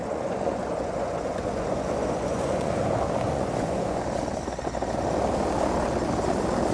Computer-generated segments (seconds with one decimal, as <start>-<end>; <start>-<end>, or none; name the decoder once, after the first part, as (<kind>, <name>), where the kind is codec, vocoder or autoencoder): 0.0-4.0 (vocoder, Vocos)